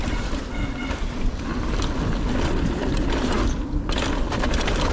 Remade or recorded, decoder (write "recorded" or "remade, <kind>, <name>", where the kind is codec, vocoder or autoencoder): recorded